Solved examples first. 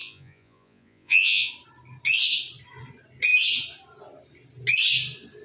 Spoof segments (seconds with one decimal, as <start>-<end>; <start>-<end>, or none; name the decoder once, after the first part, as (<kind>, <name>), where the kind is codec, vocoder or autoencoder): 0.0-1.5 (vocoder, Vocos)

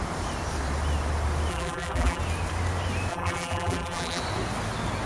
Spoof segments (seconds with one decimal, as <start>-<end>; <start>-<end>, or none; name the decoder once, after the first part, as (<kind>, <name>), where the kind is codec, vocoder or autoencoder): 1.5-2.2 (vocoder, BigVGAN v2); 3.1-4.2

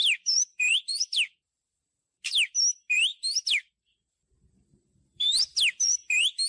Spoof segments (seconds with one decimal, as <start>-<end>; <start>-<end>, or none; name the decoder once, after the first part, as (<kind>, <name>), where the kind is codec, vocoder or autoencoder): 0.0-2.2 (vocoder, BigVGAN v2); 3.1-4.2; 4.7-5.6

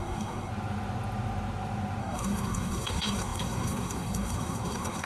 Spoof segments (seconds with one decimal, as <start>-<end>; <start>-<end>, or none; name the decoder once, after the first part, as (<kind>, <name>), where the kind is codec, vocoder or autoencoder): 0.0-0.5 (codec, SNAC); 2.0-5.1